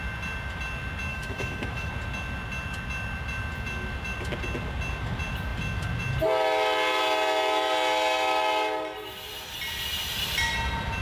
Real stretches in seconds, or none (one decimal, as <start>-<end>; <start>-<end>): 0.0-1.1; 1.9-11.0